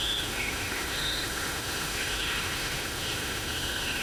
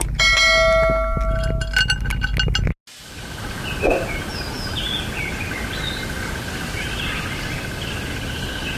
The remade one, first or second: first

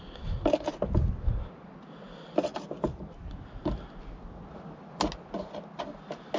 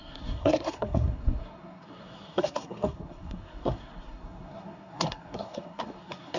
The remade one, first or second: second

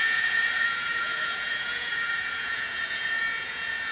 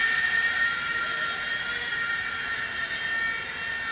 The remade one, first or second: first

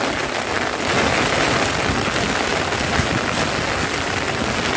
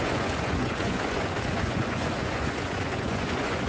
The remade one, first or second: second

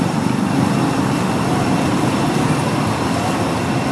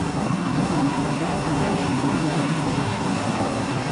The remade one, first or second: second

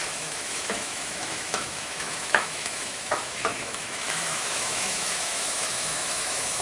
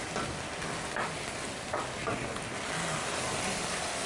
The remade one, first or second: first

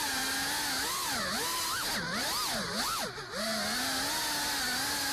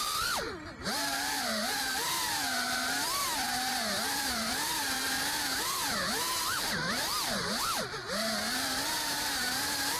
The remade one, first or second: second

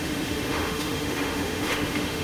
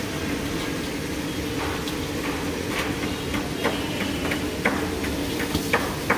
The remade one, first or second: first